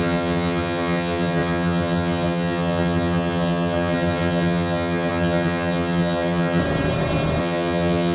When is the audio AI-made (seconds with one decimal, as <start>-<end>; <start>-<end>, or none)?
0.0-6.6; 7.4-8.1